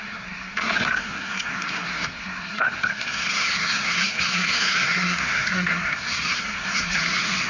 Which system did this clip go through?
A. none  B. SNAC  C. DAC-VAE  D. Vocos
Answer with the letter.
B